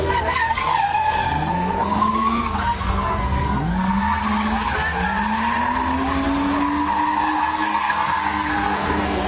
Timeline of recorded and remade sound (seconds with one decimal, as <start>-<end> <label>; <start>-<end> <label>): 0.0-4.2 remade; 4.2-7.4 recorded; 7.4-9.3 remade